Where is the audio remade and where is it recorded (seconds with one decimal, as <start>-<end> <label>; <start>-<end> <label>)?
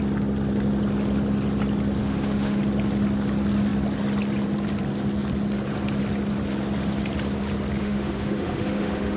0.0-2.0 recorded; 2.0-2.6 remade; 2.6-7.8 recorded; 7.8-9.2 remade